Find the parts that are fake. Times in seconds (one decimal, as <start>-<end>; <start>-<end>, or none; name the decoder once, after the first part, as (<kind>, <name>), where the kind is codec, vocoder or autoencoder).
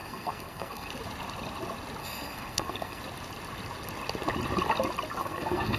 0.0-0.9 (codec, SNAC); 2.0-3.0; 5.2-5.8